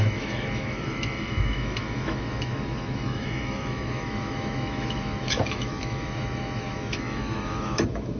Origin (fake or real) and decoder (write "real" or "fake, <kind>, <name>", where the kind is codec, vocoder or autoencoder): fake, autoencoder, DAC-VAE